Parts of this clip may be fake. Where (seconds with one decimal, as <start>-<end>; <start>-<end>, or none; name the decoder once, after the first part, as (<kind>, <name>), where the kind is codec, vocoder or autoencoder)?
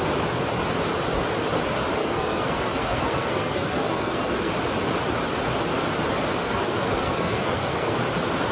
2.0-4.5 (codec, SNAC); 6.4-8.0